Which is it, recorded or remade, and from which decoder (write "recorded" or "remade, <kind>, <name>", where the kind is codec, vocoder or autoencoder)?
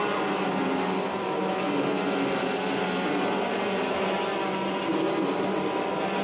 recorded